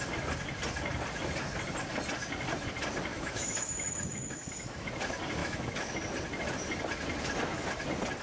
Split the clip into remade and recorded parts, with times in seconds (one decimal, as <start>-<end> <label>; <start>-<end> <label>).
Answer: 0.0-3.1 recorded; 3.1-4.9 remade; 4.9-5.4 recorded; 5.4-5.9 remade; 5.9-8.2 recorded